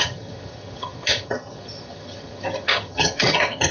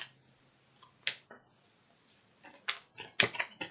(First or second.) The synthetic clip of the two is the first